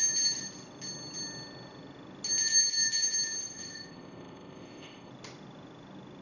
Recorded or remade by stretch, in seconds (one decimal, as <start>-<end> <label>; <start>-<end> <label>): 0.0-3.4 recorded; 3.4-5.1 remade; 5.1-6.2 recorded